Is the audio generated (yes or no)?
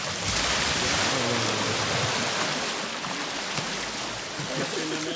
no